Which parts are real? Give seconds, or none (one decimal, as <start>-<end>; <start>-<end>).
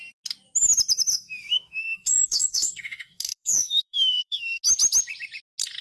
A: 0.0-1.1; 4.6-5.8